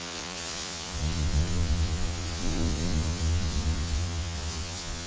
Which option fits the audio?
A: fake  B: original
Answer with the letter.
A